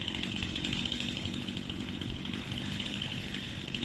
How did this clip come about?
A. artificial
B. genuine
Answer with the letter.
A